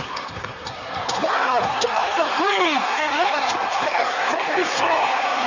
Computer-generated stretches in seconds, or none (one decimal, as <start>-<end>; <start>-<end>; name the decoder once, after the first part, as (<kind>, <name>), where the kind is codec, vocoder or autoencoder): 0.0-5.5 (codec, SNAC)